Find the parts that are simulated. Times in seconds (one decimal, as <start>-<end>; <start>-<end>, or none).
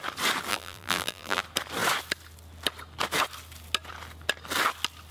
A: 0.5-1.4